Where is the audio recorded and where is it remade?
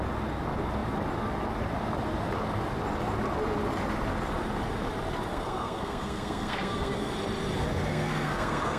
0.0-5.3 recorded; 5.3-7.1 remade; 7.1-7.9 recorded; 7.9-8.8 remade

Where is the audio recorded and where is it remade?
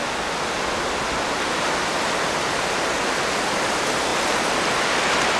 0.0-5.4 recorded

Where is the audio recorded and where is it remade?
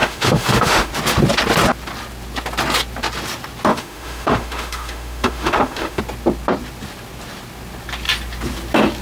0.0-0.9 remade; 0.9-3.7 recorded; 3.7-6.0 remade; 6.0-9.0 recorded